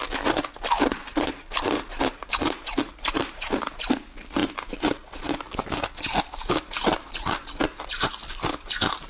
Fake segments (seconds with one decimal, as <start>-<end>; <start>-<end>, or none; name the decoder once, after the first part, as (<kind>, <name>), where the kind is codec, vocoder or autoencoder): 1.1-3.5 (vocoder, BigVGAN v2)